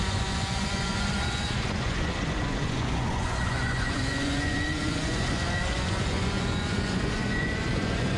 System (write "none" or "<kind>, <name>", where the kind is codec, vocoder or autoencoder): vocoder, Vocos